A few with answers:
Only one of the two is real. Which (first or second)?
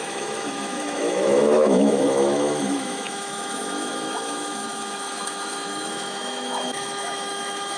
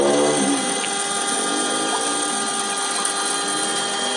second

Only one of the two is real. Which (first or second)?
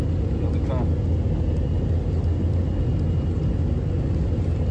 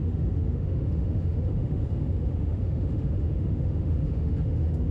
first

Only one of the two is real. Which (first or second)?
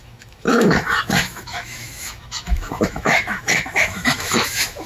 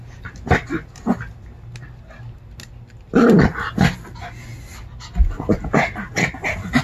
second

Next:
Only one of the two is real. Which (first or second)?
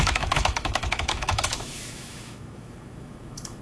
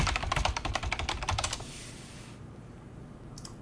second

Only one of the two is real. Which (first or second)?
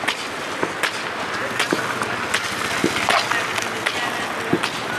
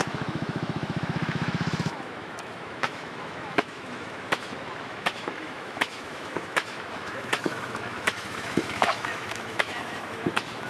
first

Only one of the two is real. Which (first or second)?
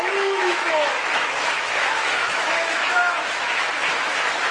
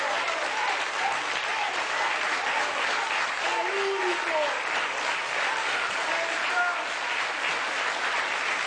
second